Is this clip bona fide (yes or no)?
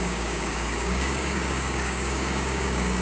no